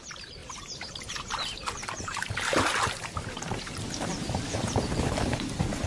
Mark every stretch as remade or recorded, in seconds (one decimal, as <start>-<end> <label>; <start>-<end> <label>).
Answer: 0.0-5.9 remade

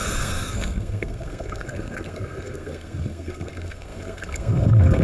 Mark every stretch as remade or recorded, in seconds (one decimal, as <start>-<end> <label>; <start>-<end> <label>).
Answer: 0.0-5.0 remade